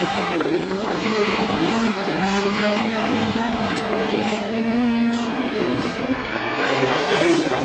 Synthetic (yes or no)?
yes